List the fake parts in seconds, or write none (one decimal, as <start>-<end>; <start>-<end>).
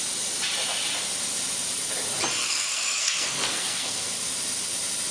2.4-4.1